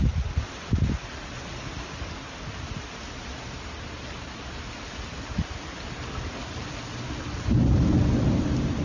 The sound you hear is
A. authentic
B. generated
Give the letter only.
A